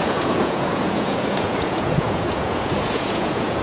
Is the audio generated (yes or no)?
yes